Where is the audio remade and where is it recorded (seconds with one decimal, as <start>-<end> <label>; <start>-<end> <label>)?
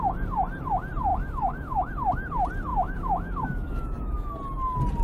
0.0-1.1 recorded; 1.1-1.9 remade; 1.9-2.7 recorded; 2.7-4.3 remade; 4.3-5.0 recorded